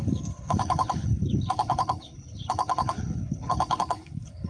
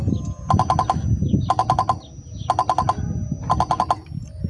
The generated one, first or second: first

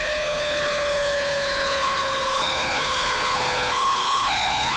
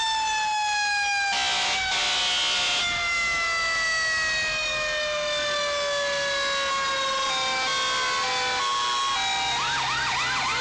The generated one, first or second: first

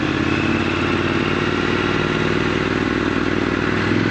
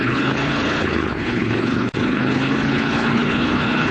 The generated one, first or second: second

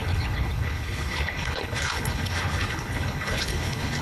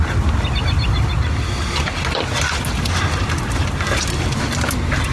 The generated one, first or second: first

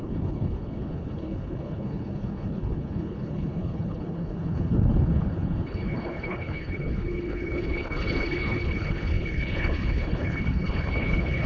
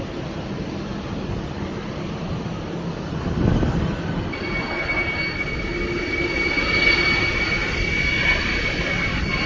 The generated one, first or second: first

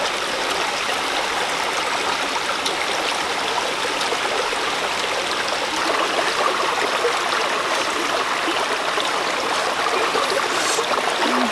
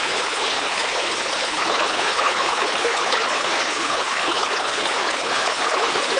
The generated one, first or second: second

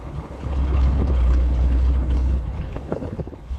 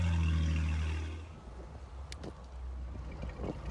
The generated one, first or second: first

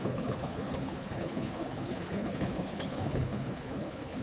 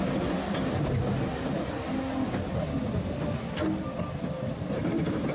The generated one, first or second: first